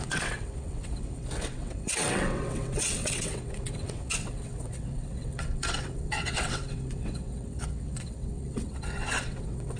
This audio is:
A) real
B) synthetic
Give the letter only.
B